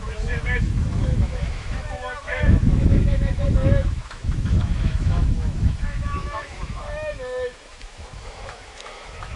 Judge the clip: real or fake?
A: fake